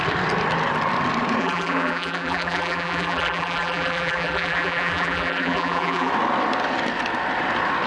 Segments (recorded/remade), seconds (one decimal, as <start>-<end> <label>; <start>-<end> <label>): 0.0-1.4 recorded; 1.4-6.1 remade; 6.1-7.9 recorded